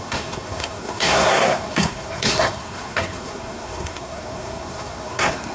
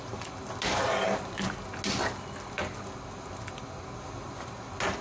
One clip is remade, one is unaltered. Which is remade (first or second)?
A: first